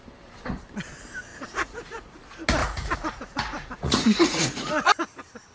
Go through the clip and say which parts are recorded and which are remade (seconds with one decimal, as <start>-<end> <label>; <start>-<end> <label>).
0.0-1.3 recorded; 1.3-2.2 remade; 2.2-2.6 recorded; 2.6-4.9 remade; 4.9-5.5 recorded